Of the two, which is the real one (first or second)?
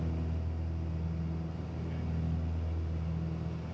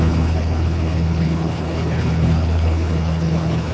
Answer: first